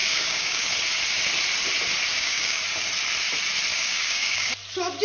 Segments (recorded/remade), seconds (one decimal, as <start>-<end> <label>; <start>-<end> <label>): 0.0-0.7 remade; 0.7-2.1 recorded; 2.1-2.6 remade; 2.6-3.7 recorded; 3.7-4.5 remade; 4.5-5.0 recorded